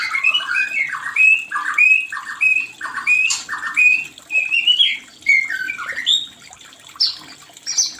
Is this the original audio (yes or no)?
yes